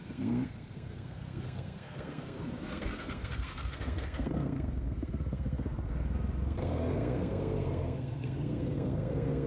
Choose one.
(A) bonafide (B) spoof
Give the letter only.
B